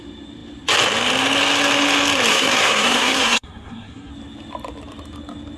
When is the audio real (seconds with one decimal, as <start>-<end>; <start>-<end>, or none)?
0.0-2.3; 4.1-5.6